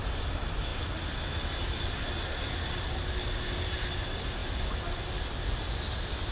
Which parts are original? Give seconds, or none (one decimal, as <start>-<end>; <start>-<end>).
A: 0.0-6.3